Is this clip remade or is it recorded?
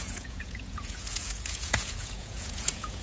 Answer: remade